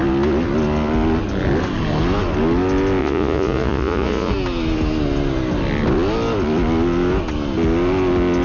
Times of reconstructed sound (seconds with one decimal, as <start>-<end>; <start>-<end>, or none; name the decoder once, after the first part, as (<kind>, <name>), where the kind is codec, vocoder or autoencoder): 3.0-4.3 (vocoder, Vocos)